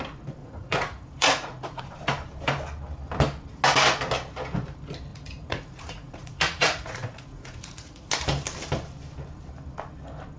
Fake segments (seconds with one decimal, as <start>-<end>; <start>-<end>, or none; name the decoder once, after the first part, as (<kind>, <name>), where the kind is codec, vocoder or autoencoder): 0.4-1.8 (vocoder, Vocos); 5.1-8.1